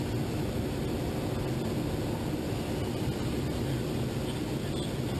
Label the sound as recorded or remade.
recorded